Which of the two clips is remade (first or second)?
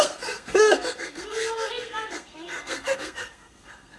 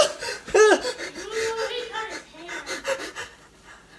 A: first